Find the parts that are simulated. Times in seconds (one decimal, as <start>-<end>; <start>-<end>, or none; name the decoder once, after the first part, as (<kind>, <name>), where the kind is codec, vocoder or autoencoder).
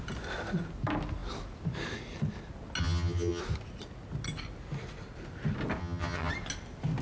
2.8-3.4 (vocoder, HiFi-GAN); 5.8-6.3